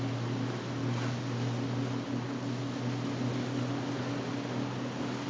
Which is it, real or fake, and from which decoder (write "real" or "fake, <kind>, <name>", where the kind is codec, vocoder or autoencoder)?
real